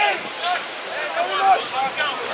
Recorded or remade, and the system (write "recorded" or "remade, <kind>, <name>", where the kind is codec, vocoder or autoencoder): recorded